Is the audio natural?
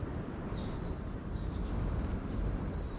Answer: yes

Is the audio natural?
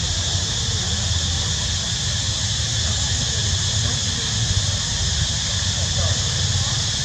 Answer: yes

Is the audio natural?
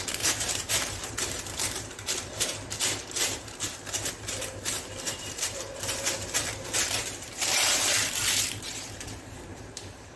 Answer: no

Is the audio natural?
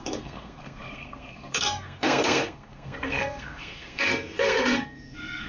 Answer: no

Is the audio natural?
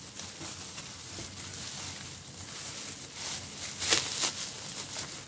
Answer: yes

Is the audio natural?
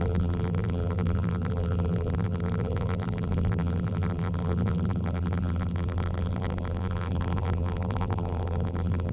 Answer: no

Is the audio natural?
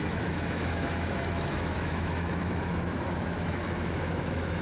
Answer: no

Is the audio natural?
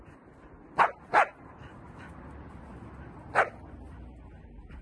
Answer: yes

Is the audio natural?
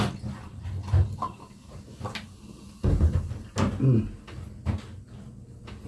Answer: yes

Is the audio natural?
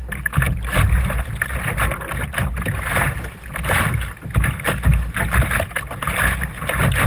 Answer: yes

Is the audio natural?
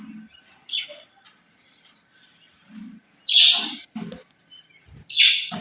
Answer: yes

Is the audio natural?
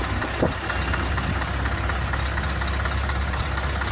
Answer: yes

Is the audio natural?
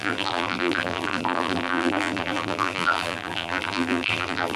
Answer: no